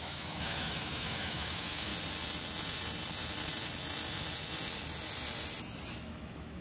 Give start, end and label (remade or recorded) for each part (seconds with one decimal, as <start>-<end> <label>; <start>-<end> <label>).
0.0-1.9 remade; 1.9-5.9 recorded; 5.9-6.6 remade